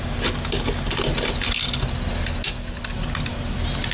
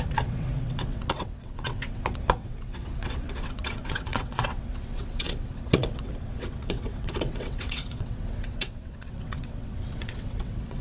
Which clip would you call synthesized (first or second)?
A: second